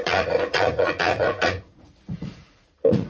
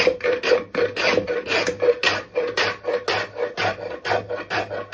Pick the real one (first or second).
second